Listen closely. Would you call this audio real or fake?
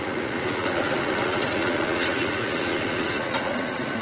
fake